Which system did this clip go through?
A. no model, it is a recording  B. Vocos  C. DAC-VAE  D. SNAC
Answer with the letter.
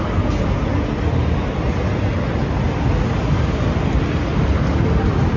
A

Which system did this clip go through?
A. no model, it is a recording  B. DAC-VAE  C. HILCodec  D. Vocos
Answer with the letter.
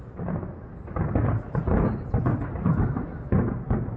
A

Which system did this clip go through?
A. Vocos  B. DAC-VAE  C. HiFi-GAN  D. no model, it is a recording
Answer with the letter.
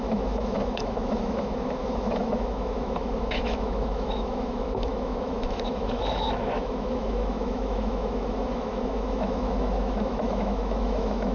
B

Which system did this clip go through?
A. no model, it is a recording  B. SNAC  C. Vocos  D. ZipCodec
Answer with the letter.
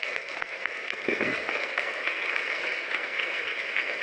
B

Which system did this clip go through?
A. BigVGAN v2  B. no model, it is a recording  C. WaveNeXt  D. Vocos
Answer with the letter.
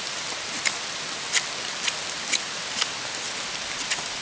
B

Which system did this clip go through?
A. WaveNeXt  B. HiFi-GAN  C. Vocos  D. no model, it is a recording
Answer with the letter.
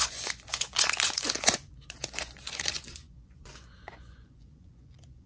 C